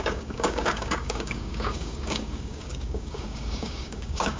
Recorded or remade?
remade